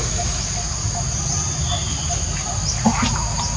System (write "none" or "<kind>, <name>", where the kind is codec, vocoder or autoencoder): none